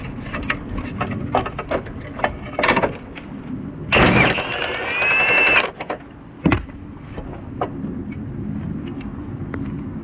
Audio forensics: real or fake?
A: real